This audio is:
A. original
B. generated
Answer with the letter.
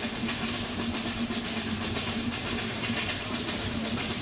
B